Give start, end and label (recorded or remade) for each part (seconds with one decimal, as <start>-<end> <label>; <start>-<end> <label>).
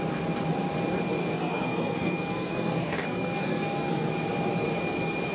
0.0-1.2 recorded; 1.2-4.1 remade; 4.1-5.3 recorded